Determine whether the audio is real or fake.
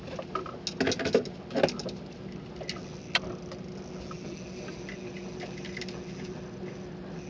real